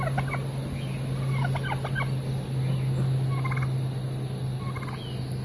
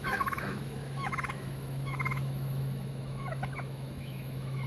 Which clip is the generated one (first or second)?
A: second